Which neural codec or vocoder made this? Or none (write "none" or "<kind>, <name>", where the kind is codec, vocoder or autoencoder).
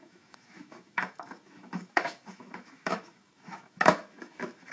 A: autoencoder, DAC-VAE